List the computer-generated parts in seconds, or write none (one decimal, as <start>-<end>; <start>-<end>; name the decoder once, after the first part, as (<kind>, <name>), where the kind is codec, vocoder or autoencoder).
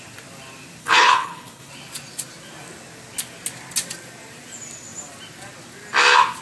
0.8-1.7 (codec, HILCodec)